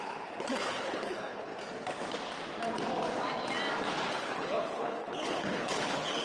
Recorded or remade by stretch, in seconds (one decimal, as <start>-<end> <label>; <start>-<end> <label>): 0.0-1.5 remade; 1.5-4.1 recorded; 4.1-6.2 remade